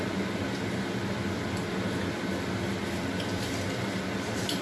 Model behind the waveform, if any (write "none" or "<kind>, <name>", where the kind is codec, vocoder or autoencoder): none